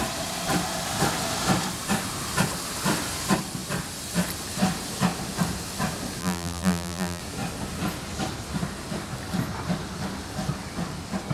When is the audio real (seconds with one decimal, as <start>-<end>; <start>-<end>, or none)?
0.0-6.2; 7.2-11.3